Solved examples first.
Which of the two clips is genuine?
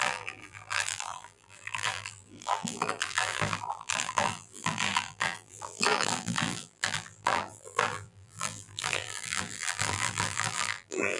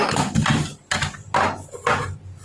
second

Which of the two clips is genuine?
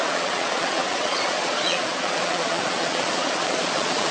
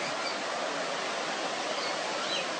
second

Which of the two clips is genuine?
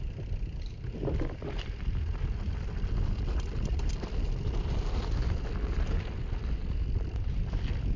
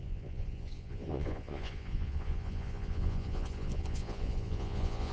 first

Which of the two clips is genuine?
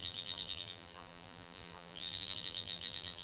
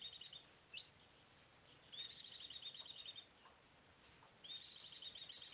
second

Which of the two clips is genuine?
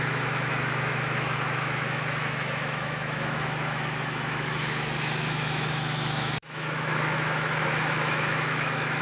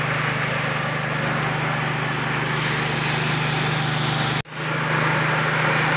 second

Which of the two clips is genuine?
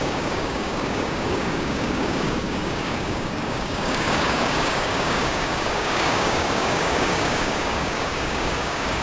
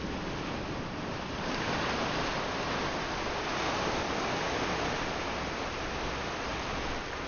second